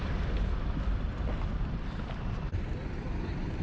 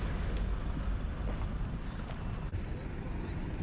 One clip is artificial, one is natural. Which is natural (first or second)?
second